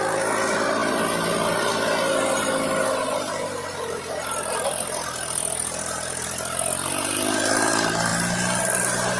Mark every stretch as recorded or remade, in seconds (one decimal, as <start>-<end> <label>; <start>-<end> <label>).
0.0-0.8 recorded; 0.8-1.7 remade; 1.7-9.2 recorded